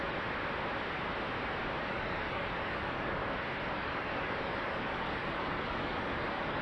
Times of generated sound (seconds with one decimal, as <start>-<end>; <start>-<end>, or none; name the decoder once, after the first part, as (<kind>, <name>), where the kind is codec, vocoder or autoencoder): 1.8-3.2 (codec, DAC); 3.7-6.6